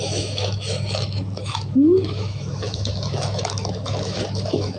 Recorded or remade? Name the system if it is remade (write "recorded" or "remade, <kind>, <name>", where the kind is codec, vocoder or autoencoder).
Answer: remade, autoencoder, DAC-VAE